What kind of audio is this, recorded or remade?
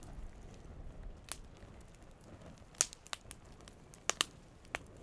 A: recorded